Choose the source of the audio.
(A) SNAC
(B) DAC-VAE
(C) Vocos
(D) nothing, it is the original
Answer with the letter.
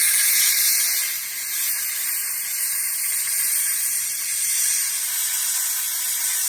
D